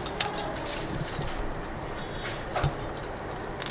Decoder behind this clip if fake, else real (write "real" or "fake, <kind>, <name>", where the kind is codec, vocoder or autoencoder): real